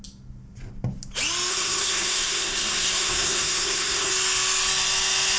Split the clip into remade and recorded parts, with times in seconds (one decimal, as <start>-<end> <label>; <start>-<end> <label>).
0.0-1.5 recorded; 1.5-4.1 remade; 4.1-5.4 recorded